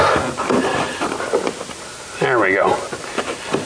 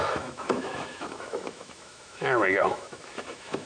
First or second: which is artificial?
second